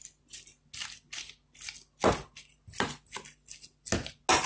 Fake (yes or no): no